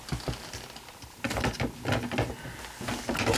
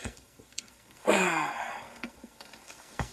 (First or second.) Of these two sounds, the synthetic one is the second